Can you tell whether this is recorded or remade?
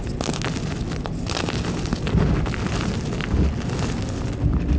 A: recorded